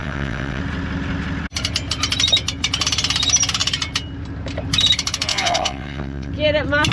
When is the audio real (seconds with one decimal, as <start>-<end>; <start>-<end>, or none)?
0.6-5.3; 6.3-6.9